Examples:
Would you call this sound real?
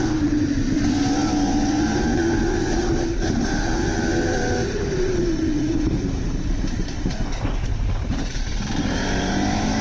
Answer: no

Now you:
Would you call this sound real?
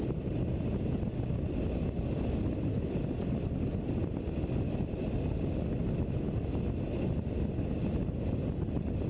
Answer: yes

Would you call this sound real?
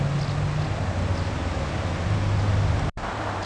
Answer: yes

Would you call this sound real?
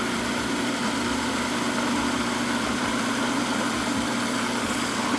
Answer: no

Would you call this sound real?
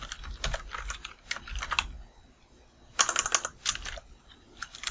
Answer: yes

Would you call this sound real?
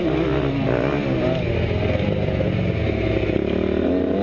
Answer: yes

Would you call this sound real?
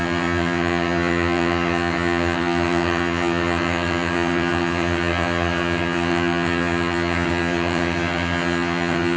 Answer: no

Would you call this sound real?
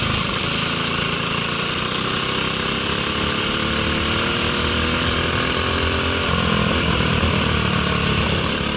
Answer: yes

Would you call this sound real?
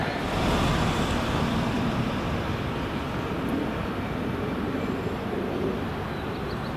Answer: no